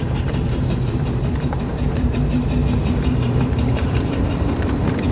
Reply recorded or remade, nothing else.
remade